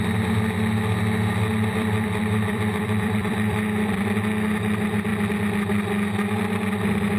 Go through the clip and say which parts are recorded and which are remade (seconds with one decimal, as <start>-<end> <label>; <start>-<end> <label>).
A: 0.0-1.5 recorded; 1.5-4.0 remade; 4.0-7.2 recorded